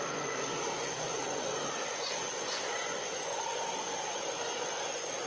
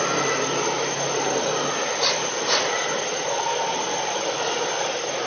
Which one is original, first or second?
second